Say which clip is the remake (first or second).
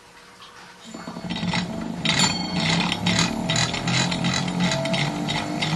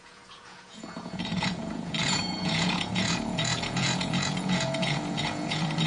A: second